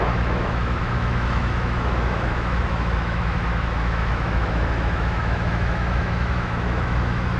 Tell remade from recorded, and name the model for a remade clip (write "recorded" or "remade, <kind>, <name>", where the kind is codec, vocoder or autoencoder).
remade, autoencoder, DAC-VAE